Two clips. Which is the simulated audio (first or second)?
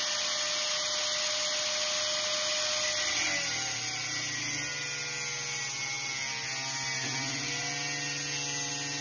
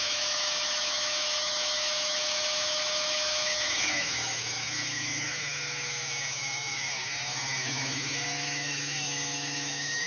second